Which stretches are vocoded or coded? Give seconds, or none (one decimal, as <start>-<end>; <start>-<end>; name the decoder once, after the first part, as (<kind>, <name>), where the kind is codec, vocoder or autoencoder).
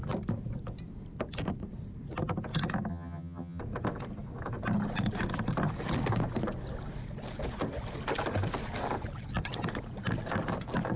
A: 2.9-3.6 (vocoder, HiFi-GAN)